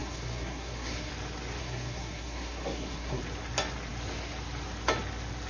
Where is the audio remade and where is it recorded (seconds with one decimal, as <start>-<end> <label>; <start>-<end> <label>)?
0.0-1.1 remade; 1.1-1.6 recorded; 1.6-3.2 remade; 3.2-5.5 recorded